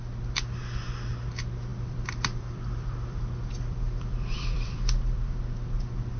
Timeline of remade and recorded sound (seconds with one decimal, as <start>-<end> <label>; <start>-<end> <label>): 0.0-1.7 recorded; 1.7-5.4 remade; 5.4-6.2 recorded